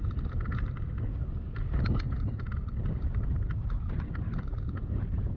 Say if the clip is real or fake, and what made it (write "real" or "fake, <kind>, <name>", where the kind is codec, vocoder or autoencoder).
real